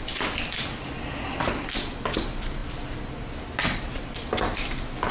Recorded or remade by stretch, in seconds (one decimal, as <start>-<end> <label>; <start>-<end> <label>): 0.0-5.1 recorded